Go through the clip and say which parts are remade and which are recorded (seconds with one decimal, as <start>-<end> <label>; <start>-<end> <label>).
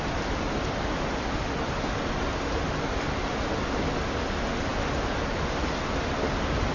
0.0-6.7 recorded